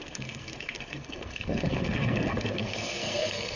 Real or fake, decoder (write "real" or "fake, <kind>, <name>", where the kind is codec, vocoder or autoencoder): fake, codec, SNAC